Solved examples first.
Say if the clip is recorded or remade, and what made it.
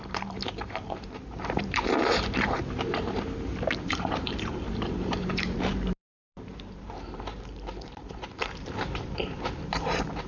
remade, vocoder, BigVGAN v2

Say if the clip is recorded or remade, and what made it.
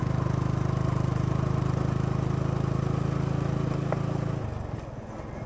recorded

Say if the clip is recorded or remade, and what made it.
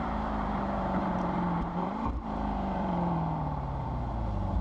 remade, vocoder, BigVGAN v2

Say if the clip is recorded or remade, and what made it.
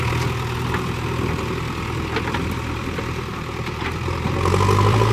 remade, vocoder, BigVGAN v2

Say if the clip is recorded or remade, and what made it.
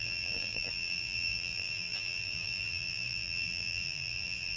remade, vocoder, BigVGAN v2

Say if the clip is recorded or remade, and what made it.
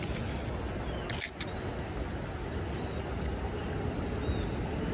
recorded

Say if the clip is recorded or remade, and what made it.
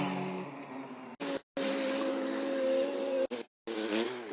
recorded